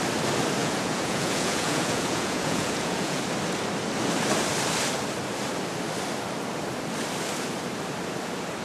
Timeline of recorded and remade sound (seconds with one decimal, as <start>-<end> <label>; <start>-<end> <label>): 0.0-0.6 recorded; 0.6-3.2 remade; 3.2-8.6 recorded